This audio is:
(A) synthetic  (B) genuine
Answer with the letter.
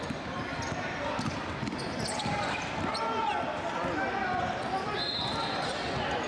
B